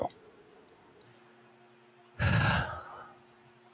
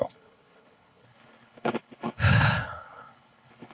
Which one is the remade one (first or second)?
second